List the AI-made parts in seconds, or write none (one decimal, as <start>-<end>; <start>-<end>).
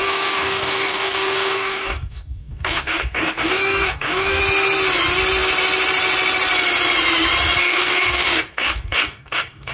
0.0-4.4; 7.6-9.7